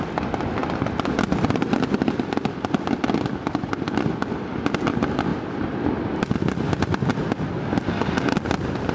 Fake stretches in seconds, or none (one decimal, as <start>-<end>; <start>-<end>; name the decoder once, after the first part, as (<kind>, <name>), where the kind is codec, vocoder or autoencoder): none